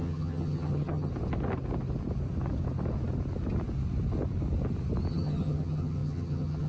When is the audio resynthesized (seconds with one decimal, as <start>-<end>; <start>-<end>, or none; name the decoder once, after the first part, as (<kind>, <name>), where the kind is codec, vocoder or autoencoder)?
0.0-1.1 (vocoder, HiFi-GAN); 5.1-6.7